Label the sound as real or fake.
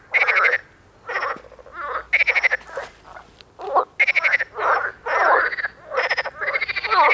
real